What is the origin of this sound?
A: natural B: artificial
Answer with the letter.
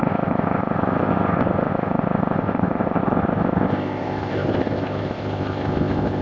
B